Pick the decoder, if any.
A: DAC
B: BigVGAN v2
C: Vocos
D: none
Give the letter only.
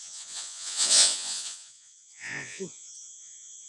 C